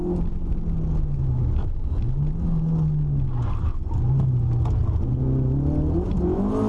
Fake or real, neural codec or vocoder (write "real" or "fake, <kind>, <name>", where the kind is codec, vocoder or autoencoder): real